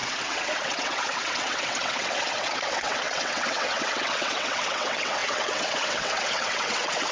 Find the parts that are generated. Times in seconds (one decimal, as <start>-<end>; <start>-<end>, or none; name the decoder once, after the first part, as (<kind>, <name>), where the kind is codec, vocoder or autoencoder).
0.0-7.1 (vocoder, WaveNeXt)